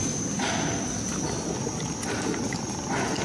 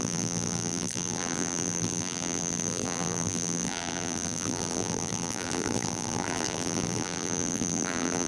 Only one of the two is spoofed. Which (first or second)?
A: second